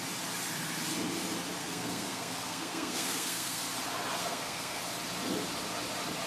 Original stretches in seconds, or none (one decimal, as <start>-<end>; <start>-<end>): 0.0-1.6; 3.6-4.2; 4.8-6.3